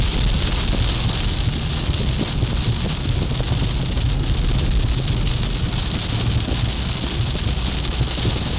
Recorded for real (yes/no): yes